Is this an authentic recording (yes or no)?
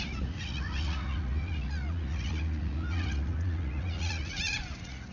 no